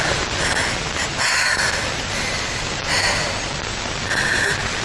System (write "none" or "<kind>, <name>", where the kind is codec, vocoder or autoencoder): none